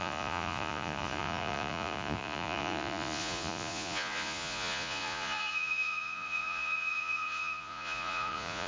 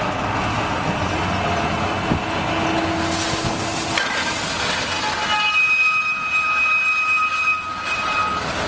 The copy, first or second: first